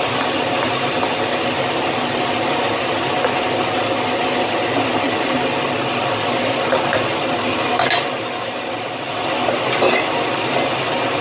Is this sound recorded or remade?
recorded